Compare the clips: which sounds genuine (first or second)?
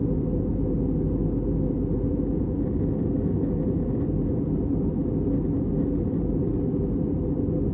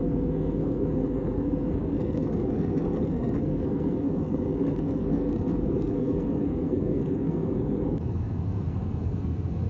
first